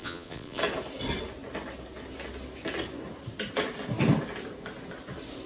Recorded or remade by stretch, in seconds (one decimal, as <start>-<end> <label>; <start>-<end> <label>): 0.0-0.6 remade; 0.6-5.5 recorded